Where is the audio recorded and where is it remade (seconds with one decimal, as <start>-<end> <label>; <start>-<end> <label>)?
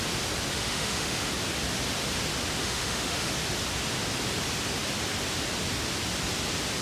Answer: 0.0-0.5 recorded; 0.5-1.3 remade; 1.3-2.6 recorded; 2.6-3.3 remade; 3.3-6.8 recorded